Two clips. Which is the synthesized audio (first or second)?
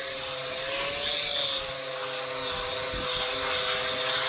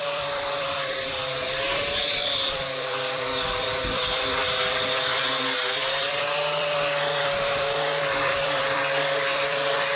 second